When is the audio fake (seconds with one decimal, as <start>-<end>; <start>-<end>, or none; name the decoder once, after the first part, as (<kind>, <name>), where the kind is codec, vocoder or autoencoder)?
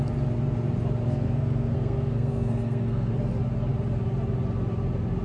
1.1-3.1 (codec, SNAC)